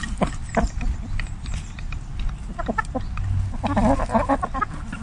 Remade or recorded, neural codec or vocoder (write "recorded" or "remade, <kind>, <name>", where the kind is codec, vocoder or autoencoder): recorded